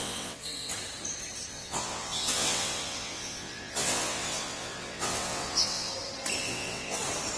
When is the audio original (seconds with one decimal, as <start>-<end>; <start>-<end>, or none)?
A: 0.7-1.5; 5.9-6.4; 7.0-7.4